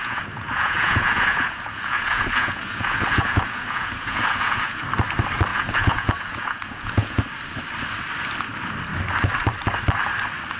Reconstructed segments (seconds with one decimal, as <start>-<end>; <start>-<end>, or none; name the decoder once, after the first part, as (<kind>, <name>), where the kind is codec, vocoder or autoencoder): 0.0-4.8 (vocoder, Vocos); 5.5-7.2